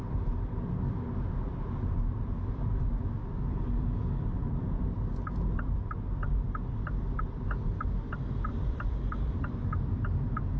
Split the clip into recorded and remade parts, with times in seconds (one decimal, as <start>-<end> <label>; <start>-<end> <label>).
0.0-1.5 recorded; 1.5-2.1 remade; 2.1-3.2 recorded; 3.2-7.8 remade; 7.8-8.5 recorded; 8.5-9.6 remade; 9.6-10.6 recorded